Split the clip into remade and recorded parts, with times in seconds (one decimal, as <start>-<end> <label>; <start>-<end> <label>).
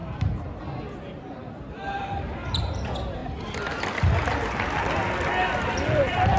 0.0-3.2 remade; 3.2-5.7 recorded; 5.7-6.4 remade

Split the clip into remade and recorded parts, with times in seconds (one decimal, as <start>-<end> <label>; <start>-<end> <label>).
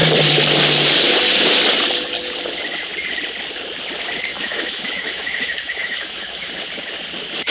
0.0-4.3 recorded; 4.3-6.5 remade; 6.5-7.5 recorded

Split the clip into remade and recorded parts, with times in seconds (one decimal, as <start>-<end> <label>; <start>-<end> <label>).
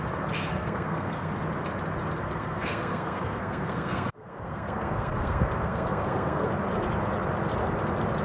0.0-0.5 recorded; 0.5-1.3 remade; 1.3-2.2 recorded; 2.2-6.5 remade; 6.5-8.2 recorded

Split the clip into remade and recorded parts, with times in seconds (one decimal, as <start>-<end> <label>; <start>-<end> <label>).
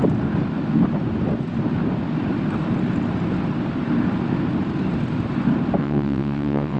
0.0-5.8 recorded; 5.8-6.8 remade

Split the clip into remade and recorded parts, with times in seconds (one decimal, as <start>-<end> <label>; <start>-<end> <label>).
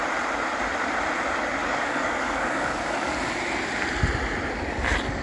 0.0-1.6 recorded; 1.6-3.1 remade; 3.1-5.2 recorded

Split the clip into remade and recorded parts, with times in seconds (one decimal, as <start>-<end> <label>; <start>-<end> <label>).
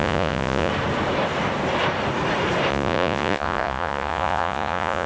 0.0-0.7 remade; 0.7-2.7 recorded; 2.7-5.1 remade